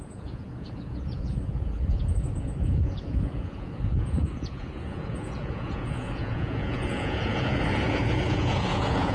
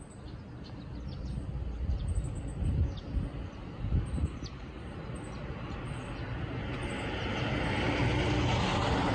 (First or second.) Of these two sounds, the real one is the second